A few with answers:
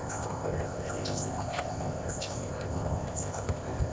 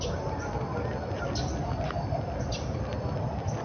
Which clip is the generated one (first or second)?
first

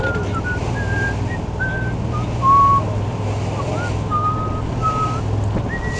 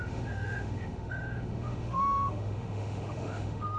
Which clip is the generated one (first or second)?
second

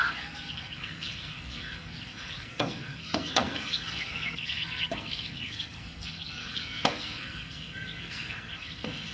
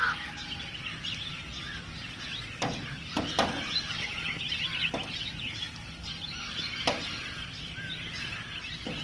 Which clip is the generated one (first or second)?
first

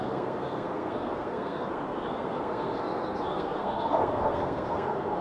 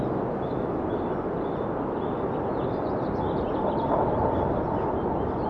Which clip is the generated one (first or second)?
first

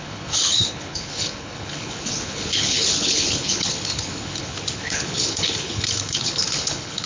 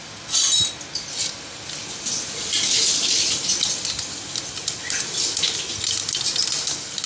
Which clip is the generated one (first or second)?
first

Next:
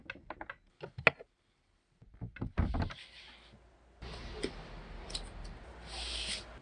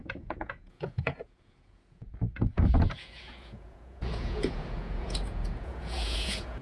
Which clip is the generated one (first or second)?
second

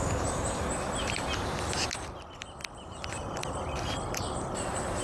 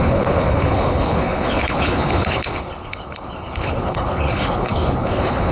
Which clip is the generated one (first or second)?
second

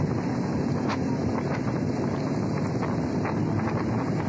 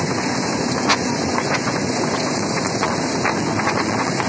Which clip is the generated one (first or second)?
second